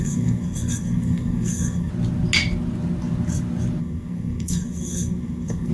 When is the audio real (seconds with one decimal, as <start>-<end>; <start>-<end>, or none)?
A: 1.9-3.8